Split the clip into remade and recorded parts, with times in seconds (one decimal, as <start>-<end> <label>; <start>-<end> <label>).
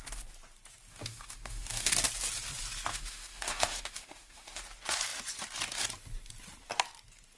0.0-0.9 recorded; 0.9-1.9 remade; 1.9-2.9 recorded; 2.9-4.6 remade; 4.6-7.4 recorded